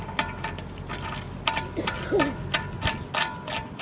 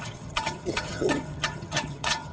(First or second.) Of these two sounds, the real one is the first